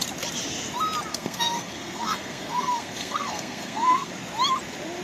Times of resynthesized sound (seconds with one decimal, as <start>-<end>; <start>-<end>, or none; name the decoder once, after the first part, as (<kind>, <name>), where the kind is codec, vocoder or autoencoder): 1.1-4.1 (codec, SNAC)

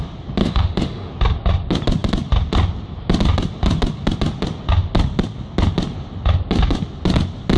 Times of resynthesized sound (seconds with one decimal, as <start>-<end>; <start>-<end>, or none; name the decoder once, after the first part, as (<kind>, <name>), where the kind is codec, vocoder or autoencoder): 0.4-1.1 (autoencoder, DAC-VAE)

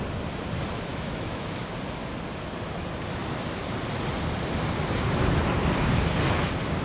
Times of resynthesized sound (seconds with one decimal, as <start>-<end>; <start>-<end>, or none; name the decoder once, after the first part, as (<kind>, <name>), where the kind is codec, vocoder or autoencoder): 0.9-1.6 (autoencoder, DAC-VAE)

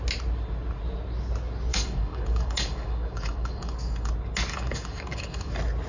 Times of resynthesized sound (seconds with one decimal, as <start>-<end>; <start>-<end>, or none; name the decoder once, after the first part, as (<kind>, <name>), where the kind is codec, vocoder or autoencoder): 1.7-4.1 (codec, DAC); 4.5-5.5

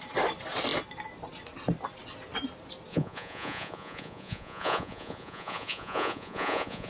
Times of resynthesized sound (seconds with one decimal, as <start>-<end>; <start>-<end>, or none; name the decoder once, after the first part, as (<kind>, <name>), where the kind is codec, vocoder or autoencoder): 2.9-6.9 (vocoder, Vocos)